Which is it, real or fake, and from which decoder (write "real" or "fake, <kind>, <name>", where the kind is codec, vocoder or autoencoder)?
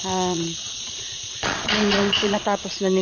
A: fake, vocoder, Vocos